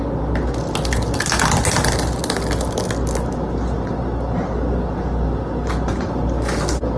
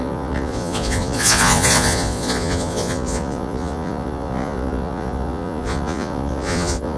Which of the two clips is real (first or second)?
first